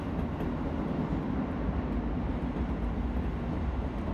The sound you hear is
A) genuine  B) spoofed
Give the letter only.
A